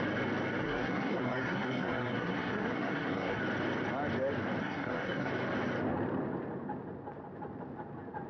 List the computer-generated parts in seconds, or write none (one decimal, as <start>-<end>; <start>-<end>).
0.6-3.4; 4.6-5.3